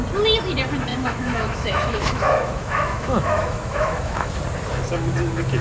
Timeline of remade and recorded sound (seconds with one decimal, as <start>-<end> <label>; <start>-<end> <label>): 0.0-0.9 recorded; 0.9-4.3 remade; 4.3-5.6 recorded